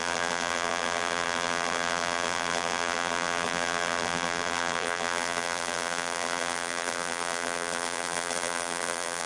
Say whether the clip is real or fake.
fake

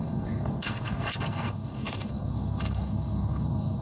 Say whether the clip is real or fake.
fake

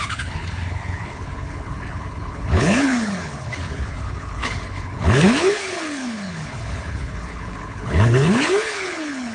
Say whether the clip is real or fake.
fake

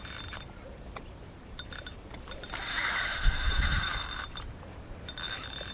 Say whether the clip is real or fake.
fake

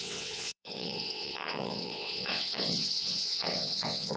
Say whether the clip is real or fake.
fake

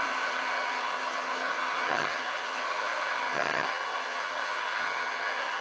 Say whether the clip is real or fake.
fake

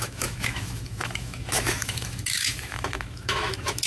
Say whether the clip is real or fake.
fake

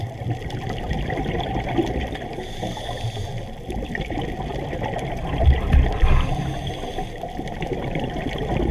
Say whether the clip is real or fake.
real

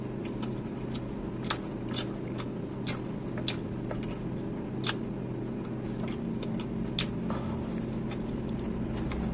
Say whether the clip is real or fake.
real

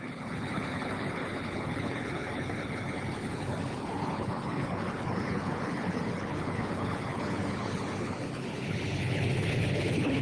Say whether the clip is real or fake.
fake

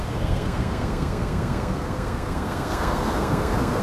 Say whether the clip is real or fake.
fake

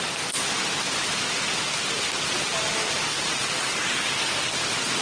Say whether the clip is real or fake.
real